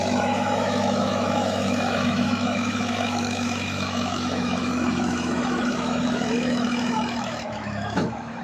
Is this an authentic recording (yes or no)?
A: no